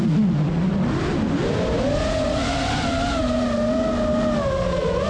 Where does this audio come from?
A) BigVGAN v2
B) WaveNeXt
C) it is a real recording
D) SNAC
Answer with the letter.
C